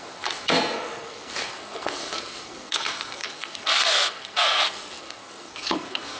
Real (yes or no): no